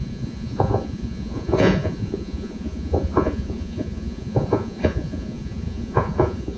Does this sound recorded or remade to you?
remade